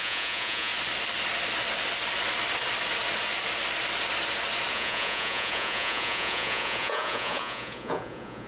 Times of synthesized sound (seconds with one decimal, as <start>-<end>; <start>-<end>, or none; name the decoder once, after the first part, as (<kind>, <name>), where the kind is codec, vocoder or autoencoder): 0.0-0.7 (vocoder, Vocos); 4.7-8.5